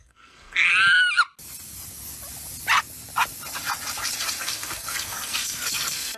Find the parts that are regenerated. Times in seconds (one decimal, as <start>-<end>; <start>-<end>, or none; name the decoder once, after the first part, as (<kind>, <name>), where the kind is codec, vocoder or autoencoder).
0.0-0.7 (codec, SNAC); 4.4-6.2